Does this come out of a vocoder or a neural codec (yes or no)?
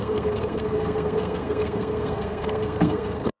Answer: yes